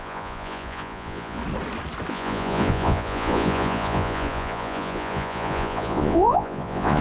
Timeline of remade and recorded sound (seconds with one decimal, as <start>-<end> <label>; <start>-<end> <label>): 0.0-1.4 remade; 1.4-2.1 recorded; 2.1-7.0 remade